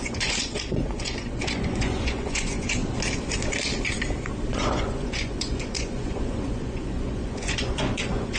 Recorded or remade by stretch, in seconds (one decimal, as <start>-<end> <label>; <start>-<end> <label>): 0.0-2.8 remade; 2.8-4.5 recorded; 4.5-8.4 remade